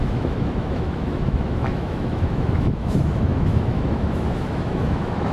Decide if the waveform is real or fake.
fake